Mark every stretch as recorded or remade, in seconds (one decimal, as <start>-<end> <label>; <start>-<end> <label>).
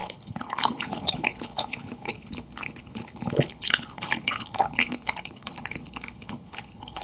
0.0-7.0 remade